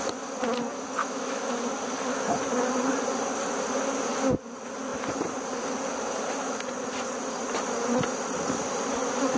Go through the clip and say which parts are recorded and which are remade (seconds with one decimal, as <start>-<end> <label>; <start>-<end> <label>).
0.0-1.0 recorded; 1.0-1.5 remade; 1.5-9.4 recorded